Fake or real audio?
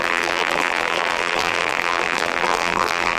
fake